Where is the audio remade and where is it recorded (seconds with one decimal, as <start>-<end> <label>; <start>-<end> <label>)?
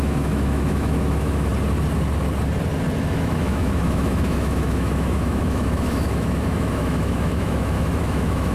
0.0-1.5 remade; 1.5-3.1 recorded; 3.1-8.5 remade